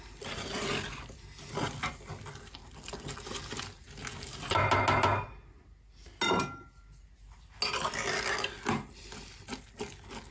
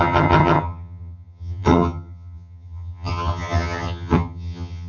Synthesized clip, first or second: second